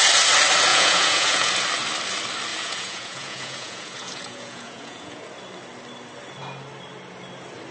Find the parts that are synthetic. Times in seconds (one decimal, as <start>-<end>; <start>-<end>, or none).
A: 0.7-1.5; 2.5-5.2